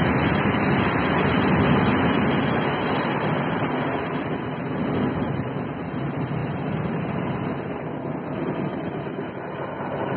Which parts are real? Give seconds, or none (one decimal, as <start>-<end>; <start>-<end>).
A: 0.0-10.2